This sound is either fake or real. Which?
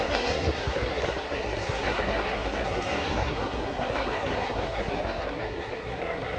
fake